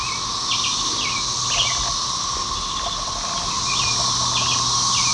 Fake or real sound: real